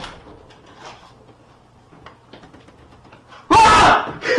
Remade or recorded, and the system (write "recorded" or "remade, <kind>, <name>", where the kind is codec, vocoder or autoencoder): recorded